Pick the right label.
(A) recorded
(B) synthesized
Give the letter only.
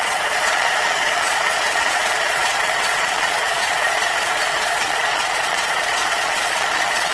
B